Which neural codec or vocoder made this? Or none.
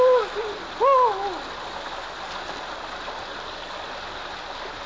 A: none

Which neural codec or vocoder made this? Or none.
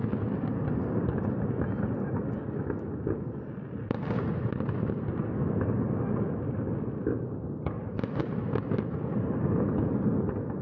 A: none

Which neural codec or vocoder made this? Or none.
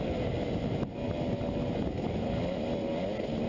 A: none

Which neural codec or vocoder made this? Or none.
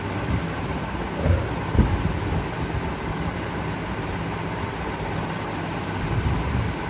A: none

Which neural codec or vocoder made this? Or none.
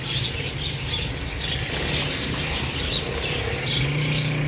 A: none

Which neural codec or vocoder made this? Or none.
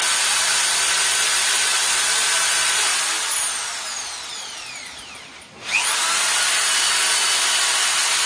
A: none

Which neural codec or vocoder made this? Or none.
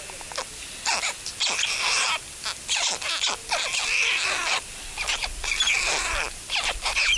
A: none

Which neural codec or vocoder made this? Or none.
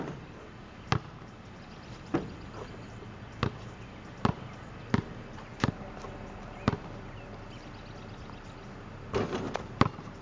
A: none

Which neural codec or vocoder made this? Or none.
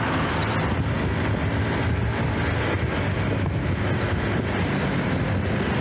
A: none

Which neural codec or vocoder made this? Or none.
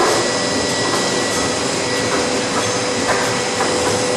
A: none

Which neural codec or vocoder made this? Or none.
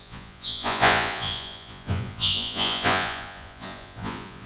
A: vocoder, Vocos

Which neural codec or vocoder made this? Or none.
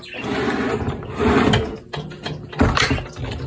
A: none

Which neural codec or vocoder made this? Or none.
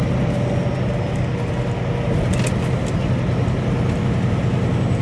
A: none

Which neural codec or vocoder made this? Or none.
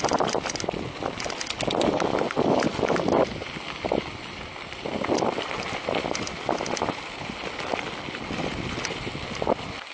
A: none